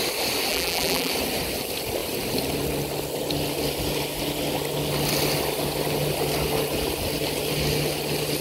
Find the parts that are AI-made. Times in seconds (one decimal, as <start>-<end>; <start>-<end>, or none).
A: 0.5-1.1